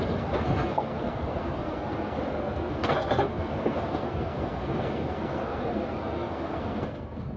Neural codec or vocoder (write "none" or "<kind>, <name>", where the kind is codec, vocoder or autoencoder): codec, SNAC